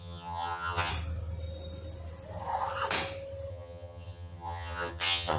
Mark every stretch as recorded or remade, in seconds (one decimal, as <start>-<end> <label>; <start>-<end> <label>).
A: 0.0-0.9 remade; 0.9-3.5 recorded; 3.5-5.4 remade